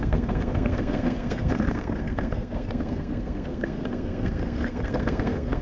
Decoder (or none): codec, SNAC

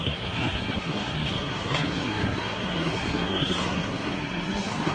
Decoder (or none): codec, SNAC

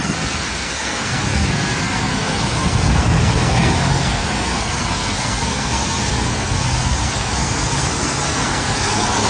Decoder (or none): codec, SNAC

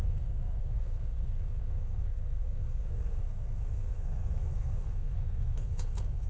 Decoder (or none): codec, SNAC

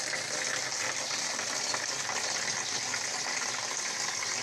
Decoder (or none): none